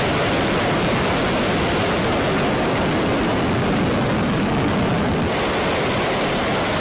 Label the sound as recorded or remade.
recorded